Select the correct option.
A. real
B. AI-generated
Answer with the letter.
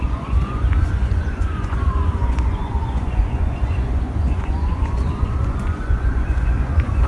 B